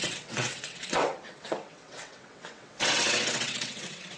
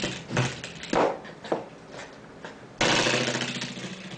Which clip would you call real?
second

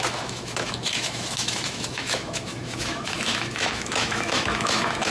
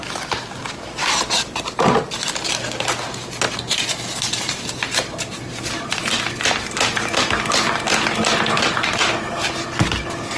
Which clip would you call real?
second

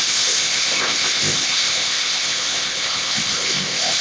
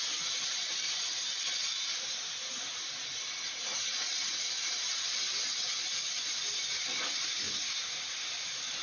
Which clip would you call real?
second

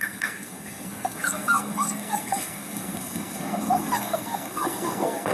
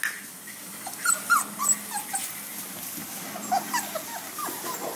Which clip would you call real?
second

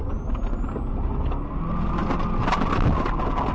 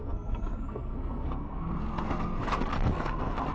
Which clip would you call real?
first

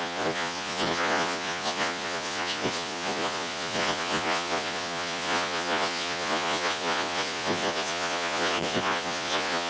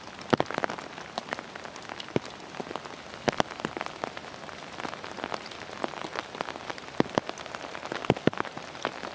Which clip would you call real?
second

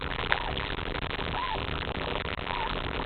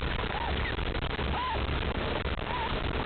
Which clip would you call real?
second